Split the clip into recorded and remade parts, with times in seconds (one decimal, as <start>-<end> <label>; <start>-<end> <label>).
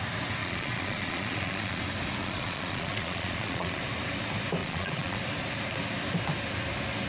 0.0-0.4 recorded; 0.4-1.8 remade; 1.8-2.2 recorded; 2.2-3.8 remade; 3.8-4.6 recorded; 4.6-5.2 remade; 5.2-7.1 recorded